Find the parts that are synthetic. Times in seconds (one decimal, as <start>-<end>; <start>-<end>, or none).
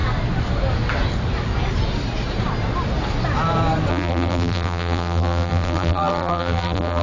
3.9-7.0